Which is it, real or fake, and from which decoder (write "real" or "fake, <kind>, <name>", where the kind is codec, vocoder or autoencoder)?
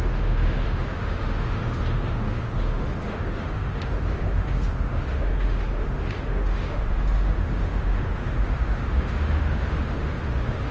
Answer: fake, autoencoder, DAC-VAE